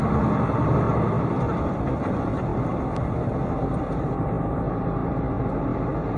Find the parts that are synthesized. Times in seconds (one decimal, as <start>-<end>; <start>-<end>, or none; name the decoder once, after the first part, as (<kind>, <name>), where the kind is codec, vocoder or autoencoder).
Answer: 0.0-5.0 (vocoder, BigVGAN v2); 5.5-6.2